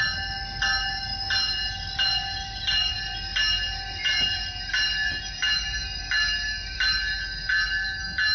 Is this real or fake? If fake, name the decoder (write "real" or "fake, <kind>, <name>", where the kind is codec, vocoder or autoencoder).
real